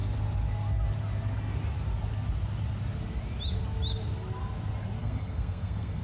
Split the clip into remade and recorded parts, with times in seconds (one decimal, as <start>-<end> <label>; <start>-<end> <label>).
0.0-5.0 recorded; 5.0-6.0 remade